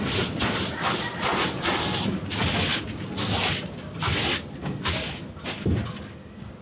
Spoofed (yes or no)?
no